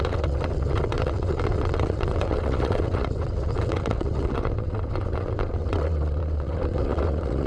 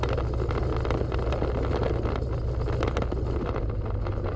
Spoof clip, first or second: first